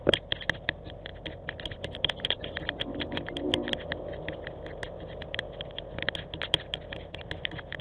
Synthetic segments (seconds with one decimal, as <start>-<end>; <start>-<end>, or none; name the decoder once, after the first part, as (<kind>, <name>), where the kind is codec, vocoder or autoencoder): none